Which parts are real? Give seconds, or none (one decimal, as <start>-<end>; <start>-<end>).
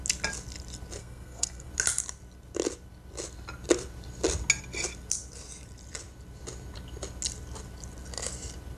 0.0-1.0; 1.7-8.8